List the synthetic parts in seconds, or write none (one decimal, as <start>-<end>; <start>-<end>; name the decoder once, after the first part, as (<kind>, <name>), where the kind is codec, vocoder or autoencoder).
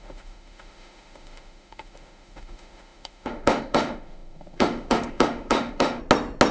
0.0-6.0 (autoencoder, DAC-VAE)